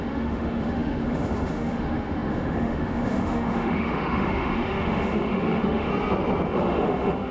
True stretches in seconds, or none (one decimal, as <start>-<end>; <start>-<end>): 5.9-6.5